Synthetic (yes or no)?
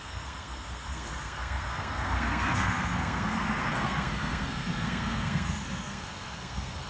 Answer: yes